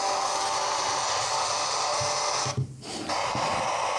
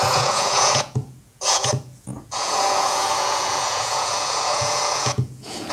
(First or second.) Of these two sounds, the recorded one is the first